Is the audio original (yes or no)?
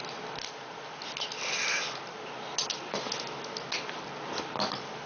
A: yes